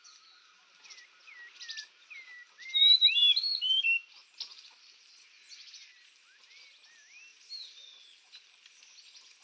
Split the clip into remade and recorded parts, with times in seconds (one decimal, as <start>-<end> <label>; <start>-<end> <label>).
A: 0.0-9.4 recorded